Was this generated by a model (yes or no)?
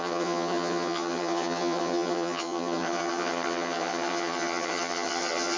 yes